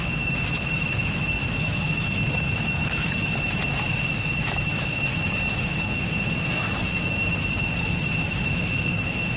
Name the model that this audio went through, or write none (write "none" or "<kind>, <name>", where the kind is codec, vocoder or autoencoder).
autoencoder, DAC-VAE